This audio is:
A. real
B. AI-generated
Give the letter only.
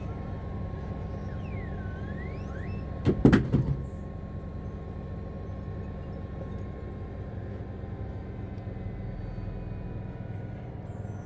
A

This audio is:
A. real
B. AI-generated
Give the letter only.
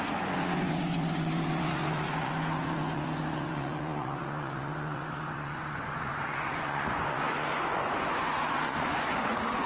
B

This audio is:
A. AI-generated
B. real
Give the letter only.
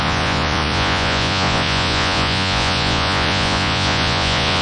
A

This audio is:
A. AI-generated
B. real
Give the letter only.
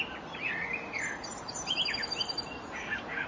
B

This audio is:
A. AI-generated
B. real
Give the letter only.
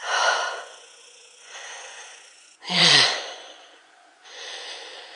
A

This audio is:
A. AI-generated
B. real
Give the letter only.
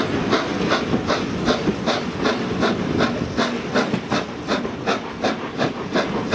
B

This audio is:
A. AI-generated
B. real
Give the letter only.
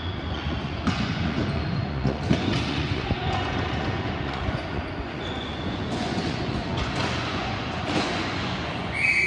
A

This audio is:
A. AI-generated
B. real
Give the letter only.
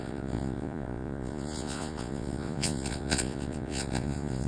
A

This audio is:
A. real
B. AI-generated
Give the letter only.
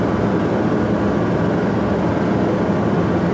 A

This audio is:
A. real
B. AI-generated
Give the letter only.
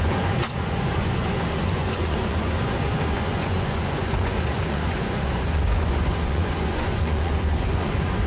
B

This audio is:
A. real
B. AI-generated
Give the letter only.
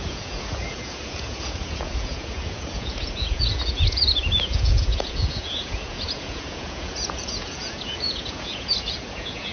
B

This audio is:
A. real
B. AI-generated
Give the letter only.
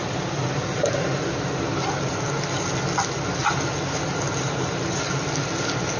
A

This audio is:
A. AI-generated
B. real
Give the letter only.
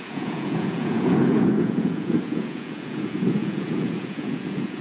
A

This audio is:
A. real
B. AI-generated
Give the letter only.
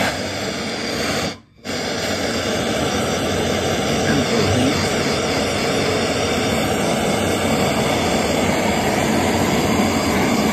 A